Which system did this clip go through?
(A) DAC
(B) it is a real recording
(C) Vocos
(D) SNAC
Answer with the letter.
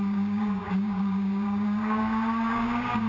A